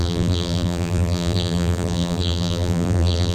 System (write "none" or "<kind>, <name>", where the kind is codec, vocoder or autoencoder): vocoder, BigVGAN v2